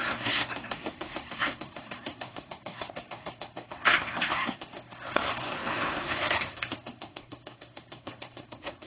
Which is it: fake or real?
fake